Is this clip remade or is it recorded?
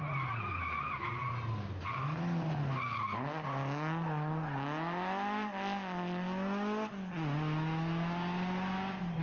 recorded